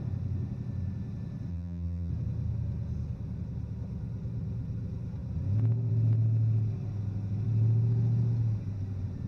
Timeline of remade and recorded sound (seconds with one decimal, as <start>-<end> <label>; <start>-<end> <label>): 0.0-1.5 recorded; 1.5-2.1 remade; 2.1-9.3 recorded